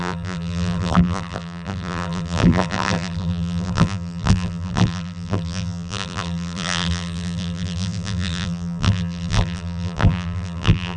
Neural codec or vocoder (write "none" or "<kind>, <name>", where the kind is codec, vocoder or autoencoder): vocoder, BigVGAN v2